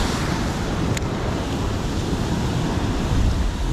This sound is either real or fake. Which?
fake